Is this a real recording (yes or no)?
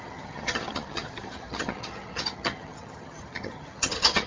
no